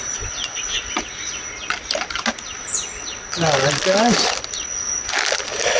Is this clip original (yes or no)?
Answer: yes